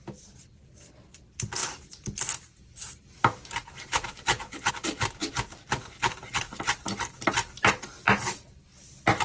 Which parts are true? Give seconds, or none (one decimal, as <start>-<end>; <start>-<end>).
0.0-9.2

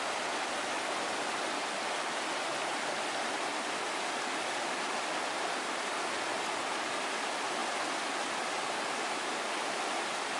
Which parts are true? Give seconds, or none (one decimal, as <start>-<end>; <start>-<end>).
0.0-10.4